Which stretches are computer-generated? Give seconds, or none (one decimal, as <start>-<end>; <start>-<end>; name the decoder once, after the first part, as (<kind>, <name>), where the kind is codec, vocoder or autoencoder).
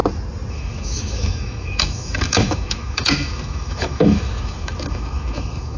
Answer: 0.5-5.8 (autoencoder, DAC-VAE)